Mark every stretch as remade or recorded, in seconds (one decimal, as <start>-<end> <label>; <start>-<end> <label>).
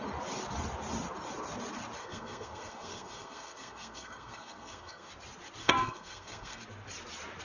0.0-2.0 recorded; 2.0-5.1 remade; 5.1-5.6 recorded; 5.6-6.6 remade; 6.6-7.4 recorded